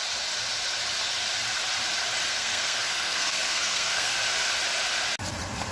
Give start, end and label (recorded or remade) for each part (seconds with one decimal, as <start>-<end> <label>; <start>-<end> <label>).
0.0-2.3 recorded; 2.3-4.1 remade; 4.1-5.7 recorded